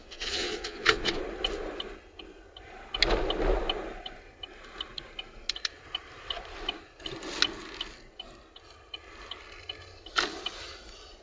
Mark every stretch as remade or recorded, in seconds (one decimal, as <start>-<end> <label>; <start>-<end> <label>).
0.0-1.2 remade; 1.2-11.2 recorded